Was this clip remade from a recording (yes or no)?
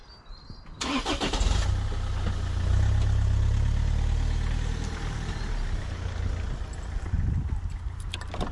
no